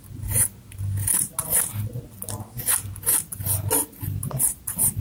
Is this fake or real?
real